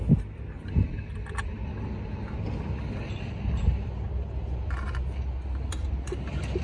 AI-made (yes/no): no